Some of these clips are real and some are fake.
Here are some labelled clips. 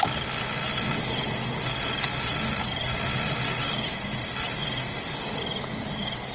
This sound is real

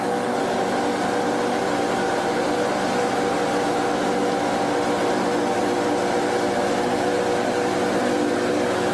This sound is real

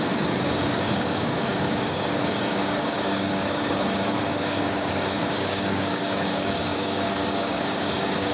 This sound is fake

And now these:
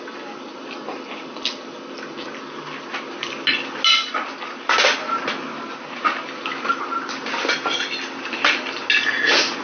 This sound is real